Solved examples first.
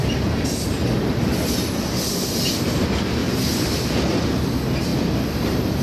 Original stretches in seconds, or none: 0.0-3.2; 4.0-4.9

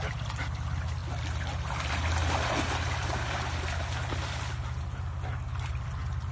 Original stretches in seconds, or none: 0.0-6.3

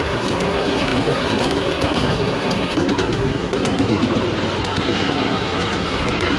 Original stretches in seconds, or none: 4.0-4.6

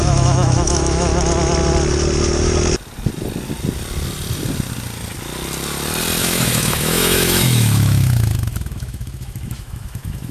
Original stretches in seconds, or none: 1.1-6.2

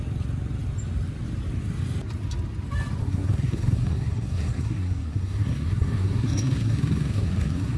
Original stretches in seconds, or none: 0.0-3.0

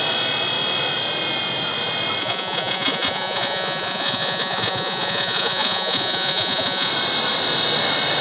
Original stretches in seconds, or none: 0.0-2.2; 6.9-8.2

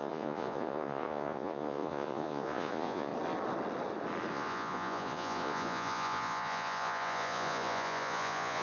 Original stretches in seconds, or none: 3.1-4.3

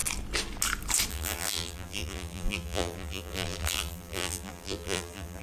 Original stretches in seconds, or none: 0.0-1.1